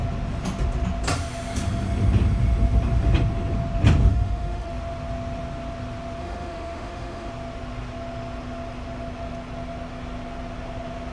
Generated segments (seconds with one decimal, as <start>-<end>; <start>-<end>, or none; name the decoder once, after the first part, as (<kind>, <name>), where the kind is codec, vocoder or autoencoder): 4.1-4.7 (autoencoder, DAC-VAE); 6.2-7.3